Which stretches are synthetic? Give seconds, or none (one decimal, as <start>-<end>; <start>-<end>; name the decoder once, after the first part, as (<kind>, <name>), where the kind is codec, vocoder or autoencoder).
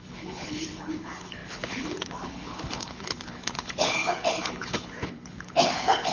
0.0-6.1 (codec, HILCodec)